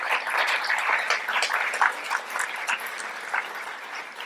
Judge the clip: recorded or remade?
remade